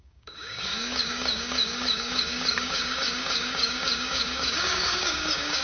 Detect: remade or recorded remade